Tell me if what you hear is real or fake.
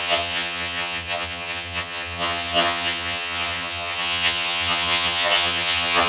fake